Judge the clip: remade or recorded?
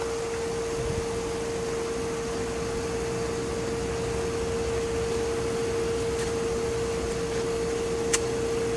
recorded